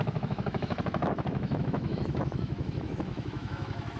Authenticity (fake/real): fake